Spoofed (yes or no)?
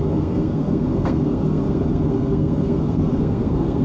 yes